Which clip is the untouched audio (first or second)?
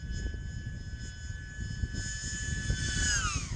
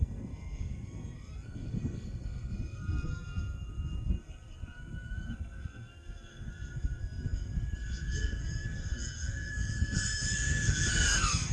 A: first